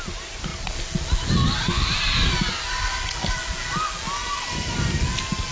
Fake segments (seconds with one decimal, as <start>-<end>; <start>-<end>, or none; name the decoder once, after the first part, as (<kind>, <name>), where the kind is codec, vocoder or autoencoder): 4.2-5.0 (vocoder, BigVGAN v2)